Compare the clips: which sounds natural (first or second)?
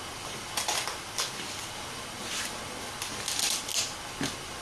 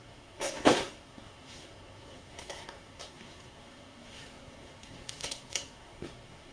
first